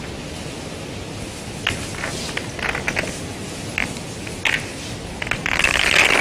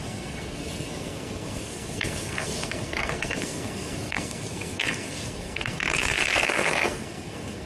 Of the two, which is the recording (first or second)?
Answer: first